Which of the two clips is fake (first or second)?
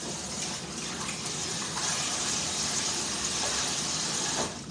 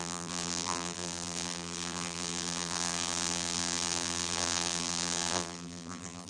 second